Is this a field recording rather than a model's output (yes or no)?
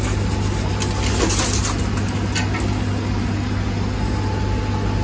yes